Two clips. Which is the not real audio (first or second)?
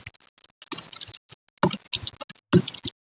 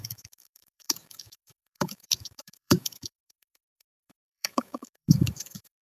second